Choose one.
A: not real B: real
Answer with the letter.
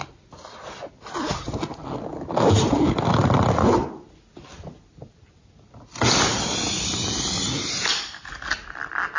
B